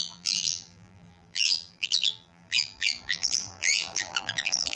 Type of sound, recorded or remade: remade